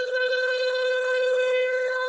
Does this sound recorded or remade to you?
remade